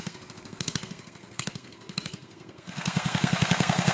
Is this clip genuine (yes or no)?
no